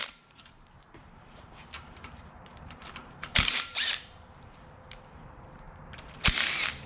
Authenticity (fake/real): fake